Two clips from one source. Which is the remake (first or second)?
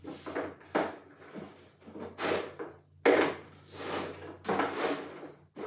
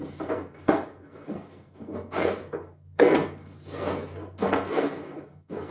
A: second